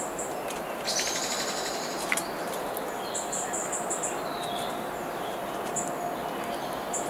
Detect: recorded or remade recorded